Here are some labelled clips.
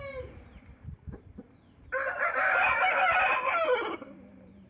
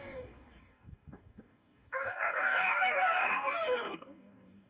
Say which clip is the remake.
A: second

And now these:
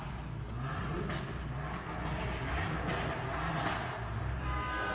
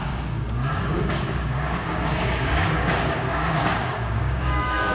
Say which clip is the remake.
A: second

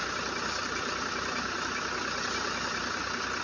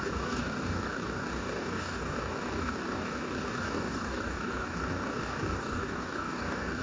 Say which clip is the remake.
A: second